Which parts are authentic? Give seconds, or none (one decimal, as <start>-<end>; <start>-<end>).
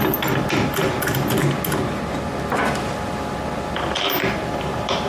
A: 1.4-4.5